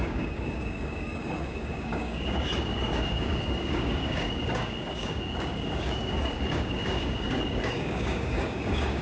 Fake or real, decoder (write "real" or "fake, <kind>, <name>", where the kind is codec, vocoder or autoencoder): fake, codec, DAC